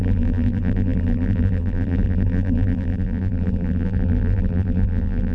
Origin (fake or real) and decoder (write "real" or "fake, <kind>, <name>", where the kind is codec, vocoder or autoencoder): fake, vocoder, BigVGAN v2